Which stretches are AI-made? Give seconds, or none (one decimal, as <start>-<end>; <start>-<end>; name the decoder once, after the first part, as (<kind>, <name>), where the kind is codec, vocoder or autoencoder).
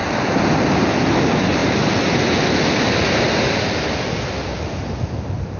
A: 0.0-0.8 (vocoder, BigVGAN v2)